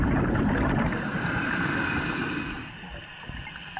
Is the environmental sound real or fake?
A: real